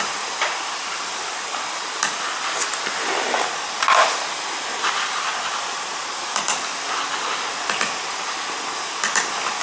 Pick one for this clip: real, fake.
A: real